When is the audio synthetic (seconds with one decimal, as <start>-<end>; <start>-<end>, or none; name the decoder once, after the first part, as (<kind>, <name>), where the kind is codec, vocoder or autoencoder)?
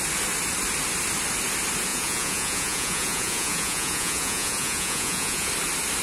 1.9-5.5 (vocoder, Vocos)